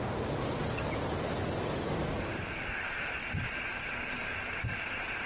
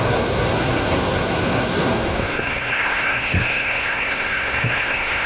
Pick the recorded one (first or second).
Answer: first